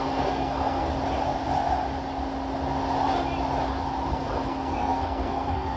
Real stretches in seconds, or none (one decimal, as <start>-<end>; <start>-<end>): 0.9-4.1